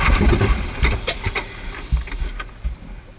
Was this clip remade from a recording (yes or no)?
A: no